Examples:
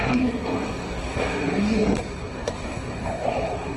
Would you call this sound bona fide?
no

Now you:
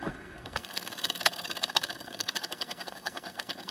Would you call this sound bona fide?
no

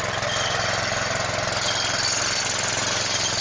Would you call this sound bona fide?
yes